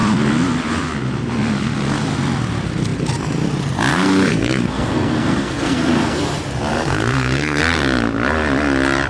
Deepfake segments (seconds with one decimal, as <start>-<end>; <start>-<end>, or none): 3.9-6.2; 6.7-7.6